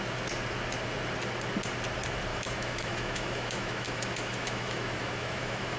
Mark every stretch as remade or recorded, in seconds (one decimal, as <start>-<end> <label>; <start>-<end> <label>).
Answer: 0.0-2.3 recorded; 2.3-5.8 remade